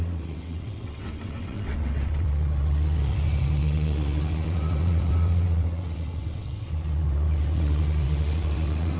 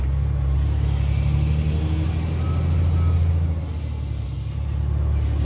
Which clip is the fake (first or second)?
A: first